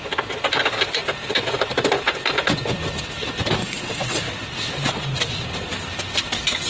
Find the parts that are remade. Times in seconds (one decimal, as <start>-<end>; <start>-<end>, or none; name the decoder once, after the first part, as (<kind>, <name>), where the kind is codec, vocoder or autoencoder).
3.6-4.2 (vocoder, WaveNeXt)